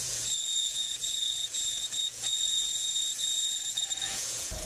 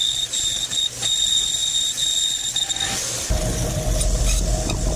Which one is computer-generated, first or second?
first